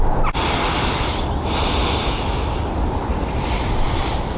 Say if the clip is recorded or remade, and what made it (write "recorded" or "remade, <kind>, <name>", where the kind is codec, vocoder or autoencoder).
recorded